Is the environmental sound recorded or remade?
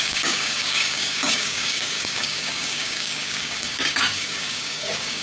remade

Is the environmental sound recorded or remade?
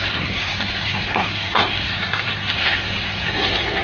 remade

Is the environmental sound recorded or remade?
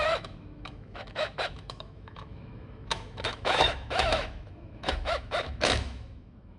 remade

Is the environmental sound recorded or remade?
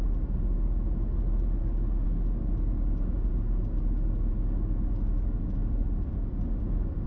recorded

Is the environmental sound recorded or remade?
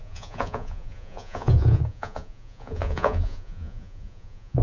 remade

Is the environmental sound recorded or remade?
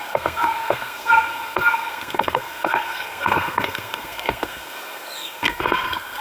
remade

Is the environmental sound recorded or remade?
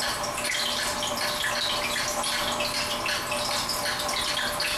recorded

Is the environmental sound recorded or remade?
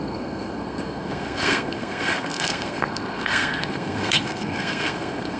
remade